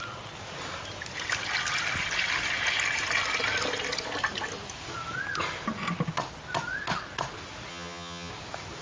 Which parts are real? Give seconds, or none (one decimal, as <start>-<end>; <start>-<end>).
0.0-7.7; 8.3-8.8